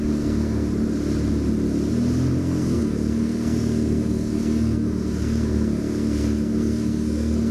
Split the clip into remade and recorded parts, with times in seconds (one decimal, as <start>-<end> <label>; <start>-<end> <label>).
0.0-0.7 remade; 0.7-2.4 recorded; 2.4-7.5 remade